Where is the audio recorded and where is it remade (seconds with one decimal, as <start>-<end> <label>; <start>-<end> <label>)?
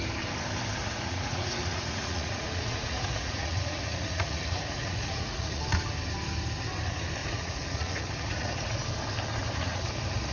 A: 0.0-0.8 recorded; 0.8-5.6 remade; 5.6-7.2 recorded; 7.2-8.8 remade; 8.8-9.4 recorded; 9.4-9.9 remade; 9.9-10.3 recorded